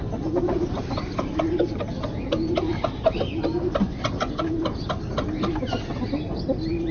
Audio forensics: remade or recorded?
recorded